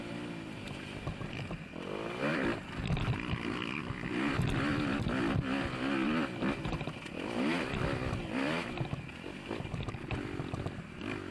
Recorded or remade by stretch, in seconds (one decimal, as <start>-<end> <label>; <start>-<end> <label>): 0.0-11.3 recorded